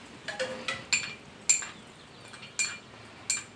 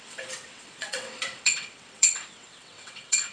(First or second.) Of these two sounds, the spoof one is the second